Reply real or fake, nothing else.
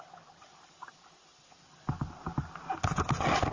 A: real